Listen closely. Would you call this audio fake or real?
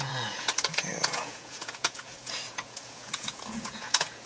fake